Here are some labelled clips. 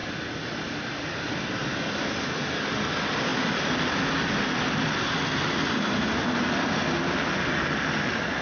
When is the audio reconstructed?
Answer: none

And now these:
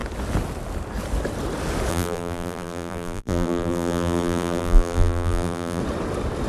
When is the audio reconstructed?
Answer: 1.9-5.8 (vocoder, BigVGAN v2)

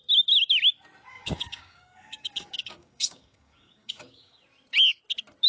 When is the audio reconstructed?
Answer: 1.1-4.4 (codec, DAC)

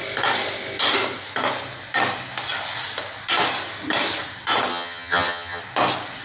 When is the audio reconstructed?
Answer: 4.7-5.6 (vocoder, HiFi-GAN)

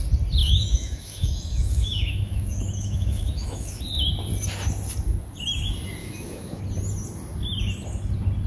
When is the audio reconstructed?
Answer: 0.4-3.8 (autoencoder, DAC-VAE); 6.0-6.6

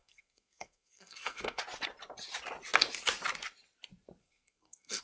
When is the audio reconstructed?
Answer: 0.0-1.6 (codec, SNAC); 4.2-5.0